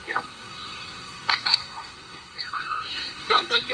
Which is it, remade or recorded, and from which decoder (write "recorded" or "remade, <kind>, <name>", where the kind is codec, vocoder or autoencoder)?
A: remade, codec, SNAC